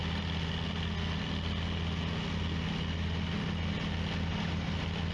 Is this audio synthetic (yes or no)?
no